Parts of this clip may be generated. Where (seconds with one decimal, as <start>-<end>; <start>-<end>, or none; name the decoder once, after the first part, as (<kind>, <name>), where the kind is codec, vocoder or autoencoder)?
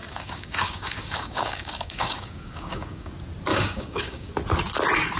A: 0.0-3.1 (codec, DAC); 3.5-4.3